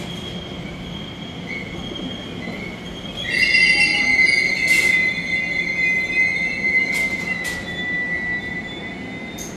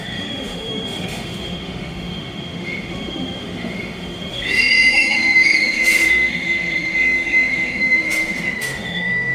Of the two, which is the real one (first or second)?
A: first